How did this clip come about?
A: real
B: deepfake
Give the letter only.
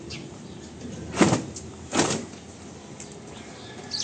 A